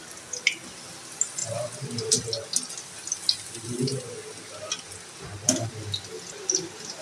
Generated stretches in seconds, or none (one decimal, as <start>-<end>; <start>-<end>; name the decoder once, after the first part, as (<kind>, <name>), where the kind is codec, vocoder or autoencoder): none